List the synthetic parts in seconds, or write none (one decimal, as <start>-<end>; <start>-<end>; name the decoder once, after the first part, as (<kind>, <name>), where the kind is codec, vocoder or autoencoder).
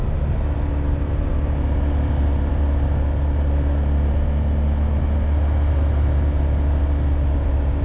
none